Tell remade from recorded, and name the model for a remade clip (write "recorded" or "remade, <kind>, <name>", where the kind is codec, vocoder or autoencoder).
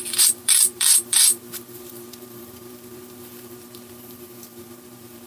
remade, vocoder, BigVGAN v2